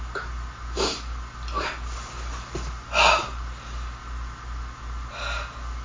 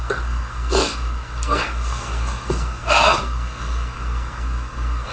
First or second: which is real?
first